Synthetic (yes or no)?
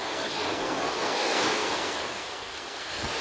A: yes